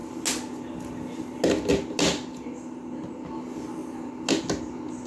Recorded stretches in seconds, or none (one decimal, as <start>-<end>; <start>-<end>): 0.0-5.1

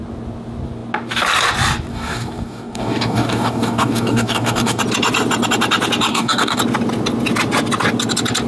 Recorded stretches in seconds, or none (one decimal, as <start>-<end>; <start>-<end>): 0.0-1.9; 4.8-6.1; 6.6-8.5